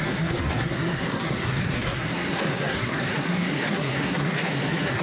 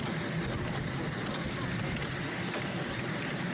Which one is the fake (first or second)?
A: first